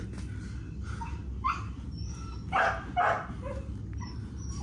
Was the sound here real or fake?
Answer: real